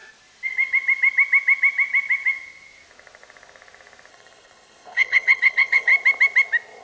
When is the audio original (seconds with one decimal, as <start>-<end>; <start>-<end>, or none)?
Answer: 0.0-4.1; 5.9-6.8